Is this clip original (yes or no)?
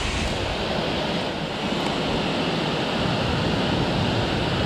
yes